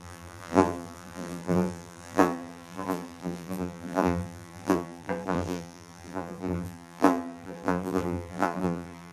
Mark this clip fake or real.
fake